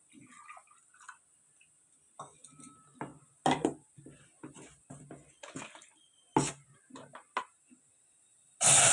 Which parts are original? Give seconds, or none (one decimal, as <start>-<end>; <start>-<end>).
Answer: 0.0-8.9